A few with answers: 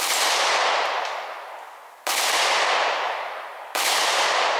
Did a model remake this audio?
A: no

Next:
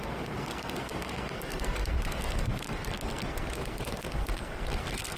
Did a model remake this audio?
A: yes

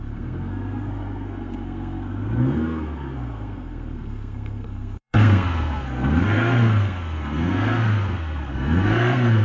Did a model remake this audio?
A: yes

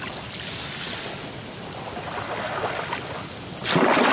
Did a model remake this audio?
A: no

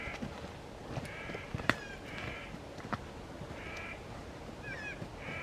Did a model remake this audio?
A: no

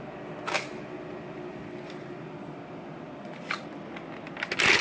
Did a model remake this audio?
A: no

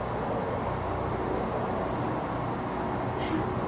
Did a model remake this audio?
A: no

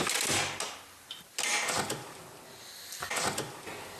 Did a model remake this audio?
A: no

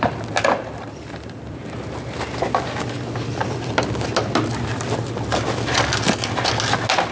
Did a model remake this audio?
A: no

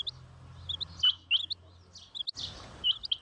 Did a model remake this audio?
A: no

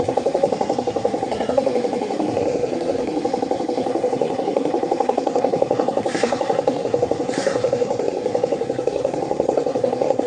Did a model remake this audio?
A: yes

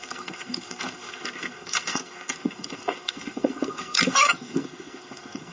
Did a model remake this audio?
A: yes